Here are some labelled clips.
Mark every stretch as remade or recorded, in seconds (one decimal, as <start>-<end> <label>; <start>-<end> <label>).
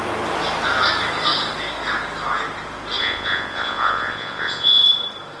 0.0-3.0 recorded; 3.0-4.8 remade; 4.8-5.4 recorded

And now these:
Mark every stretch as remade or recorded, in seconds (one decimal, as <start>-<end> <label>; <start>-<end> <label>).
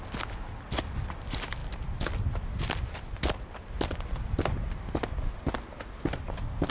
0.0-6.7 recorded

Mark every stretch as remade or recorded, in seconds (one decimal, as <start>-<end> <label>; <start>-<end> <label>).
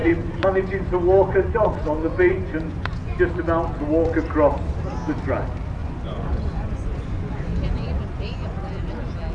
0.0-3.3 remade; 3.3-5.8 recorded; 5.8-8.8 remade; 8.8-9.3 recorded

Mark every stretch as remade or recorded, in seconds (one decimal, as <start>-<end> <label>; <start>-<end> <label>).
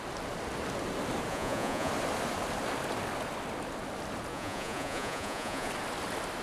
0.0-1.3 recorded; 1.3-1.9 remade; 1.9-4.3 recorded; 4.3-5.7 remade; 5.7-6.4 recorded